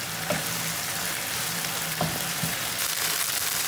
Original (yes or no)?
no